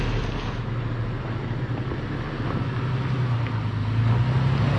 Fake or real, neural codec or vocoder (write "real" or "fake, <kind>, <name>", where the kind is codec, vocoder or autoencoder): real